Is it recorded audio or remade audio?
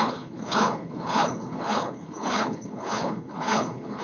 remade